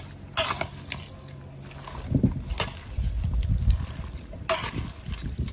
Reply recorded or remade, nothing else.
recorded